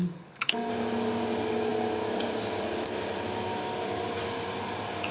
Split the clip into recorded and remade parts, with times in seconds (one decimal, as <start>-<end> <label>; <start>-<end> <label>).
0.0-0.7 remade; 0.7-5.1 recorded